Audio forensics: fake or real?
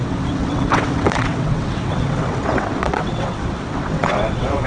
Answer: fake